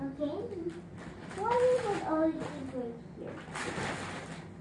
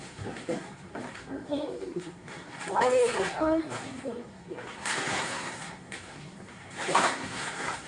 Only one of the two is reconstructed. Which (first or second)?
second